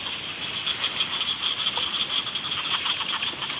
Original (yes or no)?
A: yes